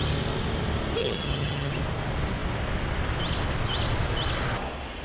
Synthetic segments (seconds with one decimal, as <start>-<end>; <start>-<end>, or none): 1.0-1.7